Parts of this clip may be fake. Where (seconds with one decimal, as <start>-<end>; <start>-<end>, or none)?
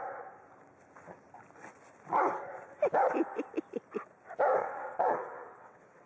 4.6-6.1